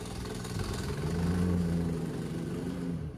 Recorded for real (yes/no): no